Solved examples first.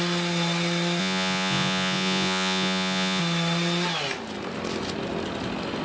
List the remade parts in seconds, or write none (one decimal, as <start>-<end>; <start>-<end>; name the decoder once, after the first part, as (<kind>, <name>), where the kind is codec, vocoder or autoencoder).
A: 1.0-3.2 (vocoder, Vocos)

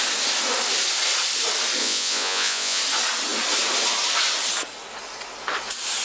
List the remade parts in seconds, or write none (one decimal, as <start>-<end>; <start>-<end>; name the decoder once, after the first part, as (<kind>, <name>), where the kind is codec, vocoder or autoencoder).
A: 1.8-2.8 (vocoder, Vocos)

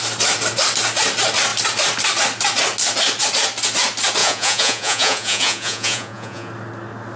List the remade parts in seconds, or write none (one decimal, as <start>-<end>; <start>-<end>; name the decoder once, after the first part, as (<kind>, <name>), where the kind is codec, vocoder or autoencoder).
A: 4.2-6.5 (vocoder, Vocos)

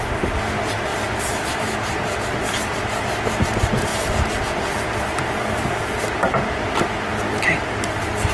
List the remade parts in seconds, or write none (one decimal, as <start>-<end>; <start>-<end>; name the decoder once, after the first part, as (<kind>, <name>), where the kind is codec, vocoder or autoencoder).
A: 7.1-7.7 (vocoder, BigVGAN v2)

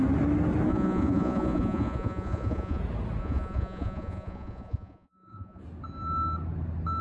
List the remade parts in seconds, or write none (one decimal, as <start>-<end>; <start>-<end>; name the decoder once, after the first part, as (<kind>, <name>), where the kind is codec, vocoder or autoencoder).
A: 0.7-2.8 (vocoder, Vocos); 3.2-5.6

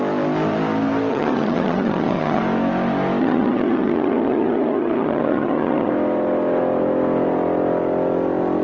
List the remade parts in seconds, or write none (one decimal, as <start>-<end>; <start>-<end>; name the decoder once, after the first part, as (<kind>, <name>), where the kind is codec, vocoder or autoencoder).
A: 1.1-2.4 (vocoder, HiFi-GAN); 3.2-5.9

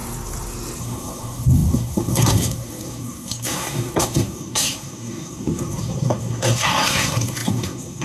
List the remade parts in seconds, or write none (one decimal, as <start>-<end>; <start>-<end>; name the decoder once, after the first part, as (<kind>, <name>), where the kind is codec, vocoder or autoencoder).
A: 0.8-8.0 (codec, SNAC)

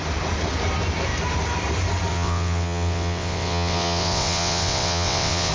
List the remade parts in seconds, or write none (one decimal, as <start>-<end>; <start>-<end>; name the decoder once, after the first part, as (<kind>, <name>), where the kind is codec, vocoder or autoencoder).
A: 2.1-5.5 (vocoder, WaveNeXt)